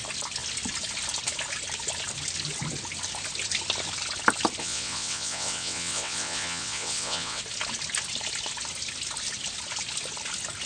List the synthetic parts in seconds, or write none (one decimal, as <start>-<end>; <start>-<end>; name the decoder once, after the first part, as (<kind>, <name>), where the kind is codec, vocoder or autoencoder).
4.6-7.4 (vocoder, WaveNeXt)